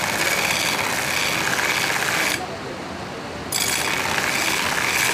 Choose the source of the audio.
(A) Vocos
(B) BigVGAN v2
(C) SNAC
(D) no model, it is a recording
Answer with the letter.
D